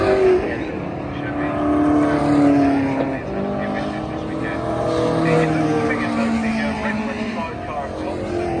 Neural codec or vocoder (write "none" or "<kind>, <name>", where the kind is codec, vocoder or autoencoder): none